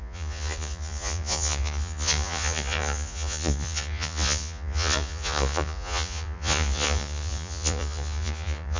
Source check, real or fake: fake